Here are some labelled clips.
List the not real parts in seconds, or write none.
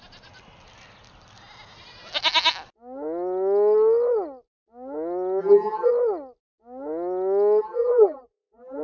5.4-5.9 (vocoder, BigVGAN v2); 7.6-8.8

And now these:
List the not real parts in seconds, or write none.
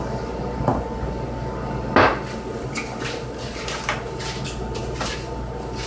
none